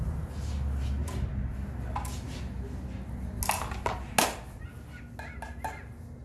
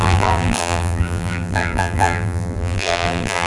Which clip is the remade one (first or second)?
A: second